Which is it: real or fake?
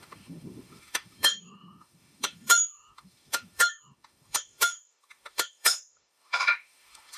fake